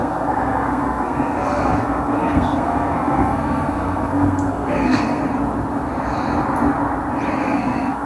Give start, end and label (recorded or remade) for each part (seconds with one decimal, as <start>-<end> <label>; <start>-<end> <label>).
0.0-5.2 remade; 5.2-7.4 recorded; 7.4-8.1 remade